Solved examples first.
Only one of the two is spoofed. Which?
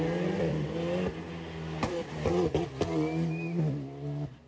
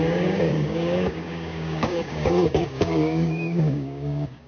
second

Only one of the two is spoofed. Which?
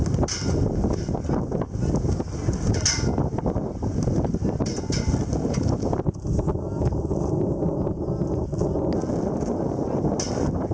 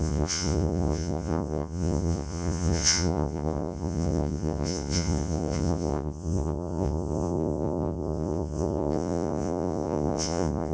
second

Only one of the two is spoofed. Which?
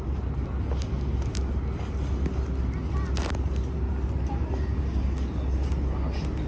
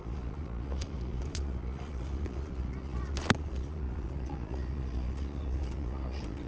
second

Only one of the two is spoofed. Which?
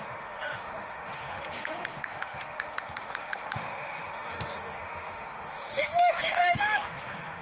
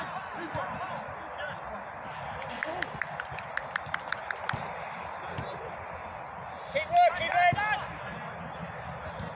first